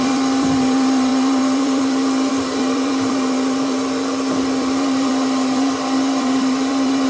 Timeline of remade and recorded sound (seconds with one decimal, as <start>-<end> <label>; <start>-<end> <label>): 0.0-7.1 remade